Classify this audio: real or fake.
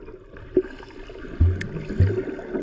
real